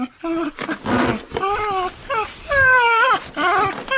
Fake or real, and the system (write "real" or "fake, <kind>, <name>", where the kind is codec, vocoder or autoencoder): real